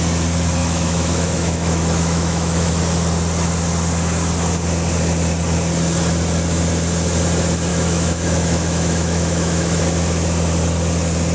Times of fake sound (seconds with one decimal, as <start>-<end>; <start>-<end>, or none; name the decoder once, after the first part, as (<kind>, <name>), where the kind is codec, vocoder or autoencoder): 0.6-2.8 (autoencoder, DAC-VAE); 7.7-9.8